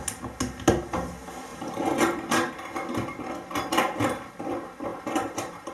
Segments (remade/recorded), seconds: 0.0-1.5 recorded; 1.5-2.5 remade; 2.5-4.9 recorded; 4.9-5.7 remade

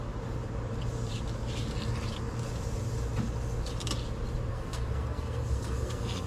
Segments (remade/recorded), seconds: 0.0-4.5 recorded; 4.5-6.3 remade